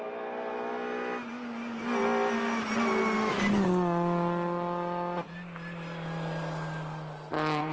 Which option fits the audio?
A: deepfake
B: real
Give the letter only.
B